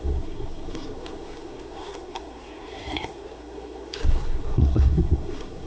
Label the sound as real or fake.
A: fake